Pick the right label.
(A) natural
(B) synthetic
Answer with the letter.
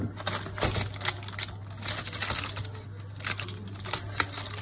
A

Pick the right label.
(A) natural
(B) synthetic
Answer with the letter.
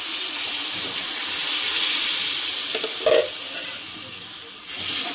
A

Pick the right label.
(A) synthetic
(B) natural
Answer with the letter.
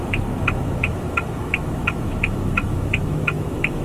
A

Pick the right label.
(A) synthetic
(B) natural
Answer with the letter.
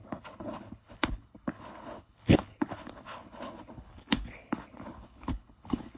A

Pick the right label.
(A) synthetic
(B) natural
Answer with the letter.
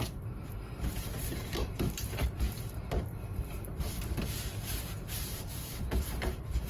A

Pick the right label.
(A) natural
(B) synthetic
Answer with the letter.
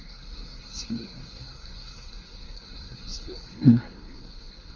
B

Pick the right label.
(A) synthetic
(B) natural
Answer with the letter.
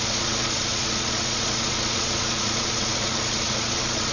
A